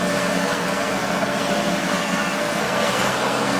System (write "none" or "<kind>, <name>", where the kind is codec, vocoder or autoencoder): codec, SNAC